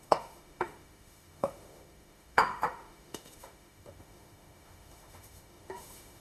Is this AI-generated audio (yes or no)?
yes